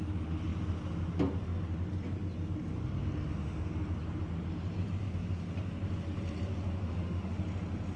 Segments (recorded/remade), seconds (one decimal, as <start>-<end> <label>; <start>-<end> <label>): 0.0-6.8 recorded; 6.8-7.4 remade; 7.4-8.0 recorded